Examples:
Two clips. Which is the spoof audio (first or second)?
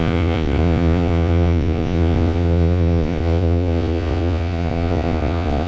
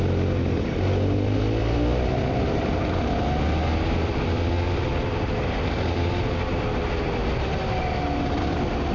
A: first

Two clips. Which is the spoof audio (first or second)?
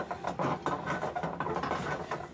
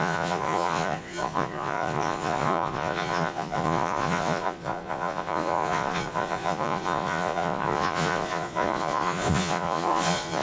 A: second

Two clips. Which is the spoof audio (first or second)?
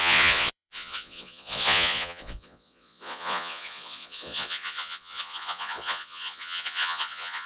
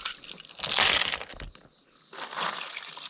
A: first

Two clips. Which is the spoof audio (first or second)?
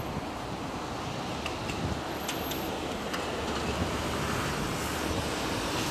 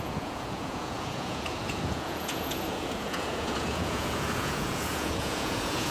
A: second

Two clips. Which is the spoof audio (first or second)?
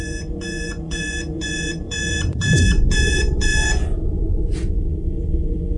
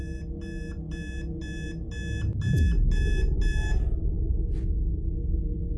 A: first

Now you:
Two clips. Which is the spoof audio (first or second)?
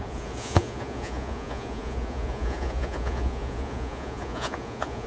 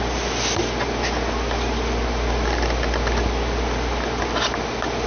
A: first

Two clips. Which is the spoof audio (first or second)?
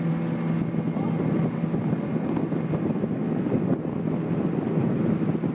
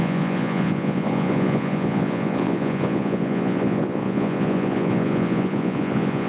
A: second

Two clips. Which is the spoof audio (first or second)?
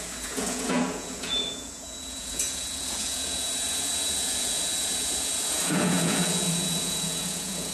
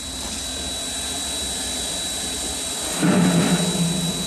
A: first